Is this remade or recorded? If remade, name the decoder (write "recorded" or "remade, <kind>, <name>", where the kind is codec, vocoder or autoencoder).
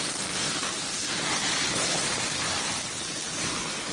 recorded